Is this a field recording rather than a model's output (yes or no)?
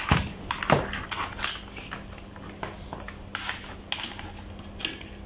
yes